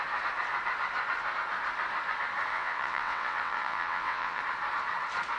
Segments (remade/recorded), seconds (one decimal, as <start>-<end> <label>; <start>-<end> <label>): 0.0-2.5 recorded; 2.5-4.4 remade; 4.4-5.4 recorded